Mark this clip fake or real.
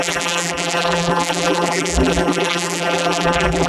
fake